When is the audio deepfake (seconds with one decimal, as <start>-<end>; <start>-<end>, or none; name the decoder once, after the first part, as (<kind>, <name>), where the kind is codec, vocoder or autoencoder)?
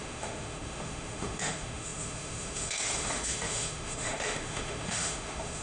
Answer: 0.0-5.6 (autoencoder, DAC-VAE)